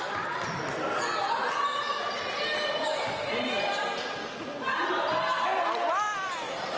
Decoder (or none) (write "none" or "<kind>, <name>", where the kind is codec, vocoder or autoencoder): none